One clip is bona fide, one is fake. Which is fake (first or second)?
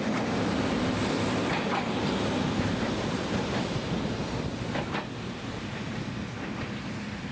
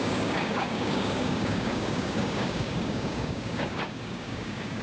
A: second